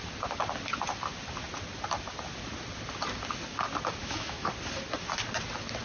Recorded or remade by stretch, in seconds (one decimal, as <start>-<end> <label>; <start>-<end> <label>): 0.0-4.0 recorded; 4.0-4.5 remade; 4.5-5.8 recorded